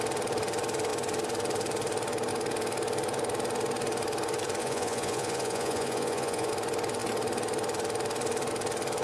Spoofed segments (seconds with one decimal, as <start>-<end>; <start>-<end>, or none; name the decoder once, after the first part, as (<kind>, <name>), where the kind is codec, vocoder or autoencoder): 4.6-6.5 (vocoder, Vocos)